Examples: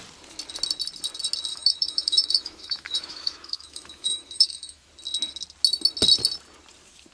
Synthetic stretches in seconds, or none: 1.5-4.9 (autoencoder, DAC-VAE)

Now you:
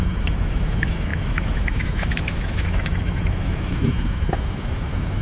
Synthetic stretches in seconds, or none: 0.0-5.2 (autoencoder, DAC-VAE)